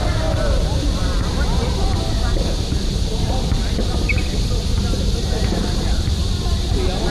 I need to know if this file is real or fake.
real